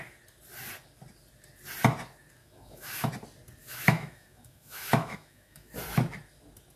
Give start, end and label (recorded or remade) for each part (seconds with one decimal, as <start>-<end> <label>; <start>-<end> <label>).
0.0-2.4 recorded; 2.4-3.1 remade; 3.1-3.6 recorded; 3.6-5.7 remade; 5.7-6.8 recorded